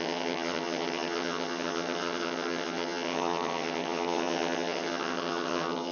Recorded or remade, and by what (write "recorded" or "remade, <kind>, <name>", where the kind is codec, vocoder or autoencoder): remade, vocoder, HiFi-GAN